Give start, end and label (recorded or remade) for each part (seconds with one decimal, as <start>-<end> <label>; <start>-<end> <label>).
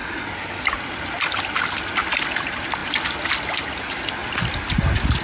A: 0.0-5.2 recorded